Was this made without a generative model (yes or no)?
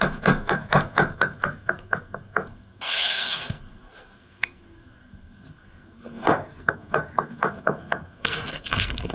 no